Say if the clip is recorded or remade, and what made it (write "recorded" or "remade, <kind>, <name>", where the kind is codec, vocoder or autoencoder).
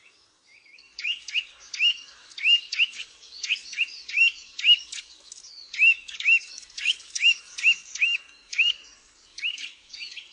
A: remade, codec, DAC